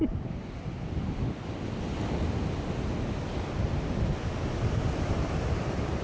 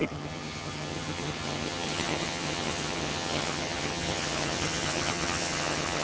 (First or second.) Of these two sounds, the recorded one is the first